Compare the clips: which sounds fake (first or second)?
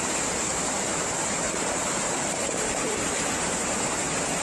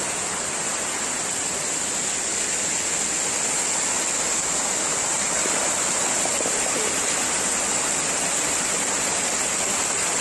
first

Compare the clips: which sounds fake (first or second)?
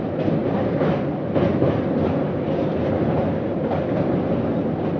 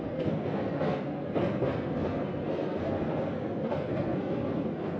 second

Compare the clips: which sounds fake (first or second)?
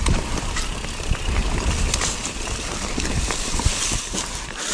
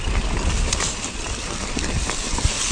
first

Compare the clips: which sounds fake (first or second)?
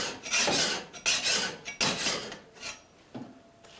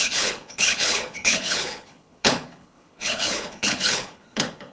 second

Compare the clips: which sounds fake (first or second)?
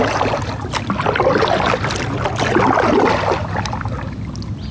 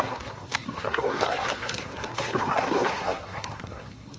second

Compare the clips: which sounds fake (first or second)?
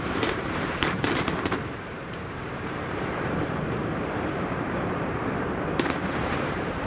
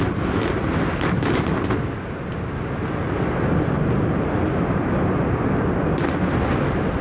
first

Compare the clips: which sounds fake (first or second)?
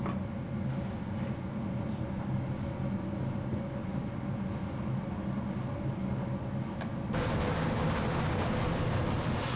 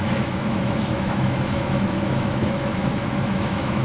second